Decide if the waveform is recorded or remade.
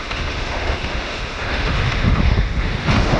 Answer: remade